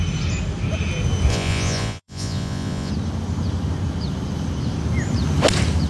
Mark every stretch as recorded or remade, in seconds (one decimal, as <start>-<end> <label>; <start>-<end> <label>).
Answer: 0.0-1.3 recorded; 1.3-2.9 remade; 2.9-5.9 recorded